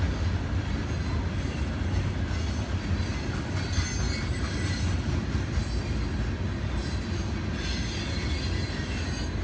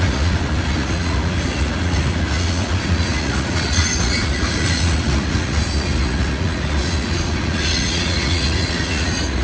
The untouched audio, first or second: first